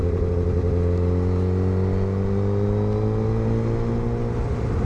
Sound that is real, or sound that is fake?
real